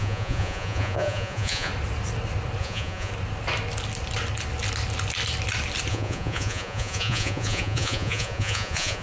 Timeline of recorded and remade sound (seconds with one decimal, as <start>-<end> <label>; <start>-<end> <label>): 0.0-1.7 remade; 1.7-2.6 recorded; 2.6-3.1 remade; 3.1-5.9 recorded; 5.9-9.0 remade